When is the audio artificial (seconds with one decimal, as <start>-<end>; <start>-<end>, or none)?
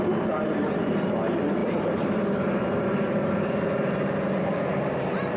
0.0-5.4